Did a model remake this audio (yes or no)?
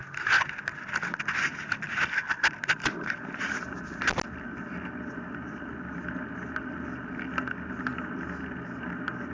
no